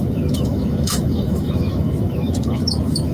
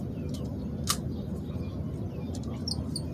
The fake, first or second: first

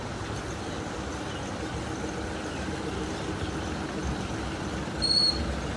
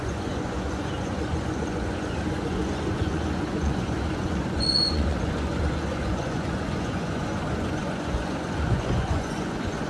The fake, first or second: second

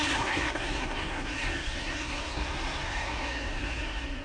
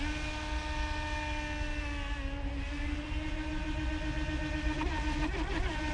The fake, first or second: first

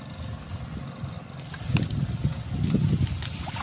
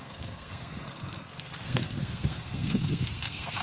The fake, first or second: second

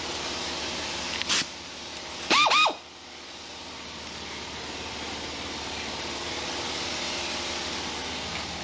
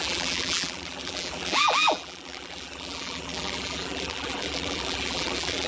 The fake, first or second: second